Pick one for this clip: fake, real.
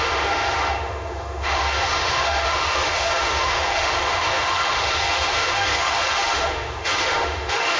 fake